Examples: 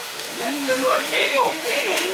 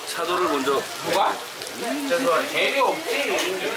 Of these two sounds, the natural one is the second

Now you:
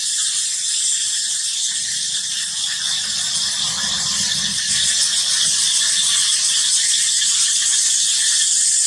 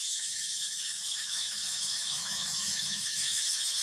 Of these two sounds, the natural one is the first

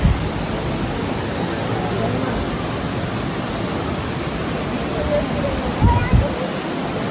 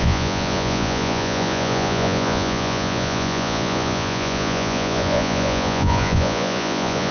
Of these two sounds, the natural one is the first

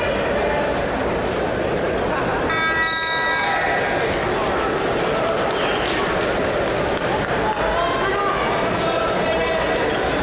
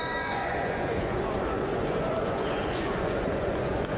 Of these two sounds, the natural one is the first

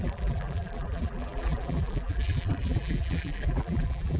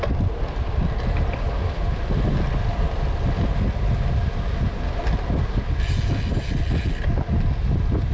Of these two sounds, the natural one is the second